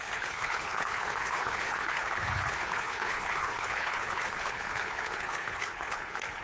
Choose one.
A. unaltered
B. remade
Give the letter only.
B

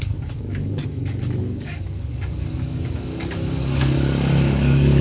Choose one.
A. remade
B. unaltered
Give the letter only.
A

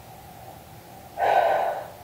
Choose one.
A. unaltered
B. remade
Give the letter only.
A